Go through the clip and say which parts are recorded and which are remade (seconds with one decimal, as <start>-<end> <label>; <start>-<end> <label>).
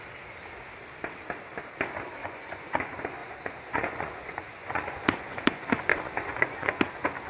0.0-2.2 recorded; 2.2-2.8 remade; 2.8-3.2 recorded; 3.2-6.8 remade; 6.8-7.3 recorded